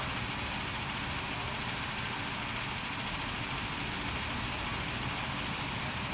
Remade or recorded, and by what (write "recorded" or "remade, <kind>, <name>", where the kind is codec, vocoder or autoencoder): recorded